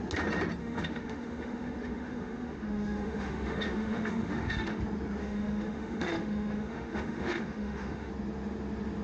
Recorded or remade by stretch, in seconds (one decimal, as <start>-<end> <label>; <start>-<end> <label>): 0.0-0.6 recorded; 0.6-4.8 remade; 4.8-5.2 recorded; 5.2-8.1 remade; 8.1-9.0 recorded